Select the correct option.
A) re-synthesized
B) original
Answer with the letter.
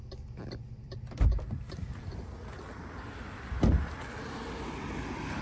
A